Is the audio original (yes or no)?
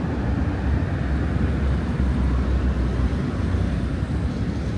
yes